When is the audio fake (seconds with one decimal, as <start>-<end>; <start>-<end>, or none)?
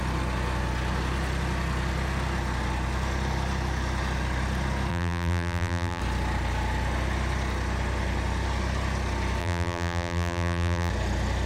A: 4.9-6.0; 9.4-10.9